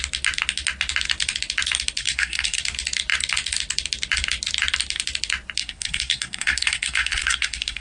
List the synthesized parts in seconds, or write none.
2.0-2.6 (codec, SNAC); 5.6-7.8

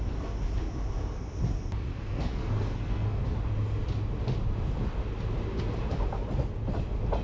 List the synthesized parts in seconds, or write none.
1.9-3.2 (codec, SNAC)

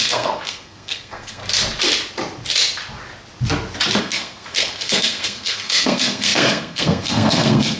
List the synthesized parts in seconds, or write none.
0.0-1.4 (codec, SNAC); 4.0-7.8